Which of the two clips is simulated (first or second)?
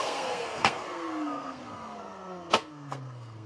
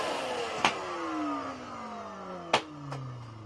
first